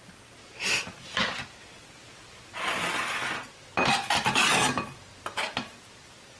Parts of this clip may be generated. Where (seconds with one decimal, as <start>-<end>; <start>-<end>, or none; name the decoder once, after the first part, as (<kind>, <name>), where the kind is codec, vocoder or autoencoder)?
none